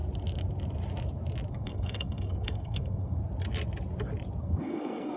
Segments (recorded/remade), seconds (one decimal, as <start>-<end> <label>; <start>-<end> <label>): 0.0-1.5 recorded; 1.5-3.2 remade; 3.2-4.4 recorded; 4.4-5.2 remade